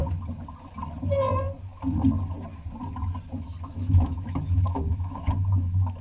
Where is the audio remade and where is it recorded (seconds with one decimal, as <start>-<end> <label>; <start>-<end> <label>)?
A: 0.0-3.6 recorded; 3.6-6.0 remade